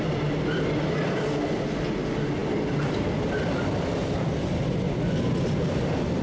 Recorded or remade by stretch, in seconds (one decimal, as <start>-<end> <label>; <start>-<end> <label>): 0.0-6.2 recorded